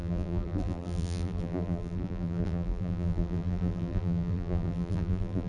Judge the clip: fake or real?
fake